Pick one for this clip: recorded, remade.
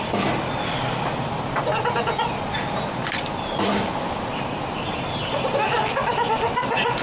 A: recorded